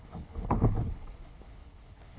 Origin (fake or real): fake